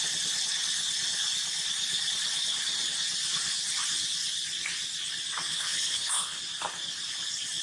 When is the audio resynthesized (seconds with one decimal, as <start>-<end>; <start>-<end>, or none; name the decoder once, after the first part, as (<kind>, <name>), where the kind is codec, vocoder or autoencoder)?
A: 5.5-6.4 (codec, HILCodec)